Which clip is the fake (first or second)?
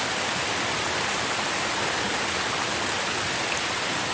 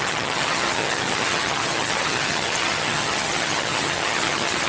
second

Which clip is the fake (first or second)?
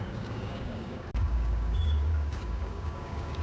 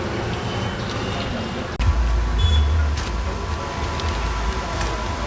first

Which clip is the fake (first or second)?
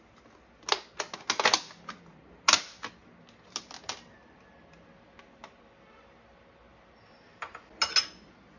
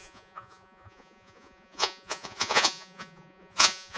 second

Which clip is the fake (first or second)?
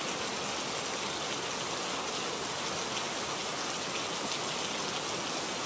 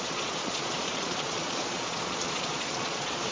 second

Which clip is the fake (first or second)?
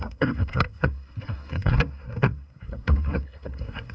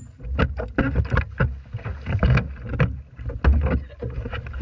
first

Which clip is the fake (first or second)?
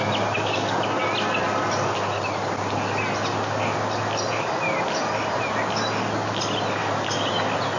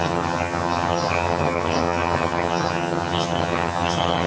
second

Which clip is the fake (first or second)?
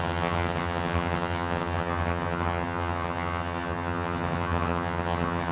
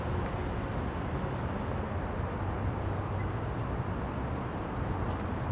first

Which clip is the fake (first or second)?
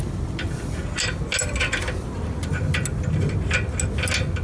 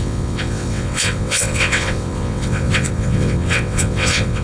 second